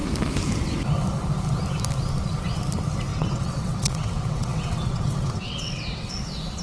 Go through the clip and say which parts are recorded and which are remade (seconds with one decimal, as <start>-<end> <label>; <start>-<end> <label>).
0.0-3.1 recorded; 3.1-6.1 remade; 6.1-6.6 recorded